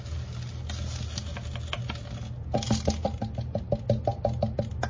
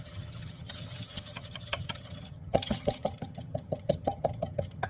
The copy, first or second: second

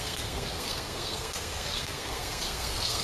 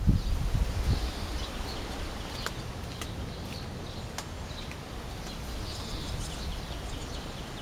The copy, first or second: first